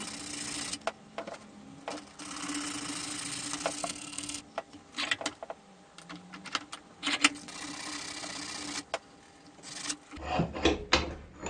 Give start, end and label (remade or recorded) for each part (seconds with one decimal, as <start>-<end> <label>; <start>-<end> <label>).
0.0-3.8 recorded; 3.8-4.4 remade; 4.4-11.5 recorded